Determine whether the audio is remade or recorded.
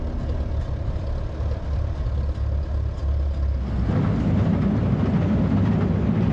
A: recorded